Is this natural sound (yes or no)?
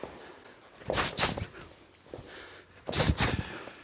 yes